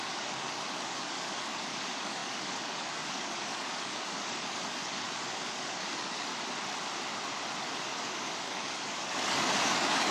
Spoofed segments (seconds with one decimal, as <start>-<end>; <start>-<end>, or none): 0.0-6.3; 7.6-10.1